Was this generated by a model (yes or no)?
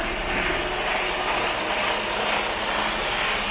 no